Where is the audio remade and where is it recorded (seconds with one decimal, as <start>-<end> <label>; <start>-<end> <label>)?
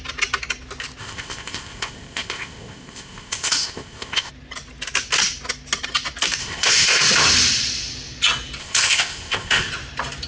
0.0-1.0 recorded; 1.0-4.3 remade; 4.3-6.4 recorded; 6.4-7.0 remade; 7.0-8.6 recorded; 8.6-9.7 remade; 9.7-10.3 recorded